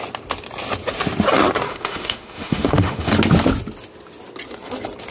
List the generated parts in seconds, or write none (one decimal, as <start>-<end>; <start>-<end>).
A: 1.7-3.1